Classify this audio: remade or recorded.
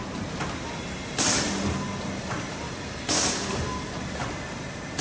recorded